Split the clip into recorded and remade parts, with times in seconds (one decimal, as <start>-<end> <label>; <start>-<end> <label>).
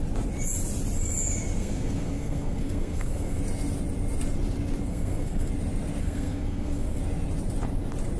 0.0-1.6 recorded; 1.6-3.4 remade; 3.4-4.9 recorded; 4.9-5.5 remade; 5.5-6.0 recorded; 6.0-7.0 remade; 7.0-8.2 recorded